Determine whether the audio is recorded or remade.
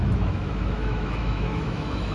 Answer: remade